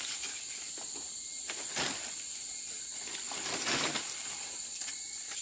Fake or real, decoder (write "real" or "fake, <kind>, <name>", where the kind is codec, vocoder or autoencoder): real